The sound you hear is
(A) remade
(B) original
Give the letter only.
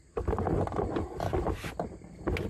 B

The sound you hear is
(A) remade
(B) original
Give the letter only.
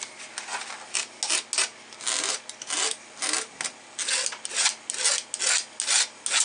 B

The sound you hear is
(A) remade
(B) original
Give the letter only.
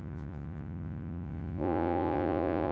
A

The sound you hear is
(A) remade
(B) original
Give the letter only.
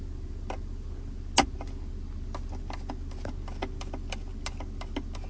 B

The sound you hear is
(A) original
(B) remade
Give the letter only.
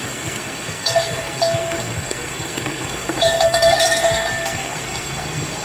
B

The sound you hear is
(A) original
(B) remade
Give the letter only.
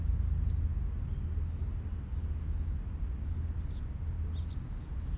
A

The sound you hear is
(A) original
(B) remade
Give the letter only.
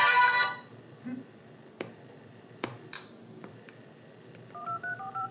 B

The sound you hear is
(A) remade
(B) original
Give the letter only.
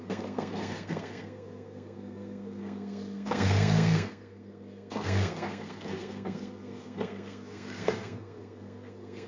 A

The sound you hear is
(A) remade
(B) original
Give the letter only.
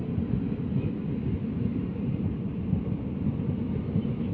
B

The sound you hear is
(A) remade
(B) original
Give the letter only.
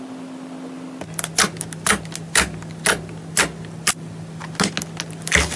B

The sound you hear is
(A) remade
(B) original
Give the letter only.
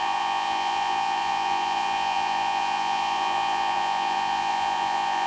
A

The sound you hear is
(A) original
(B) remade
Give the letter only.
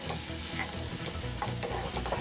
A